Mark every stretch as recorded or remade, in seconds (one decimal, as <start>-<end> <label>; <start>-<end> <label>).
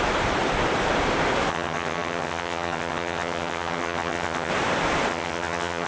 0.0-1.5 recorded; 1.5-4.5 remade; 4.5-5.1 recorded; 5.1-5.9 remade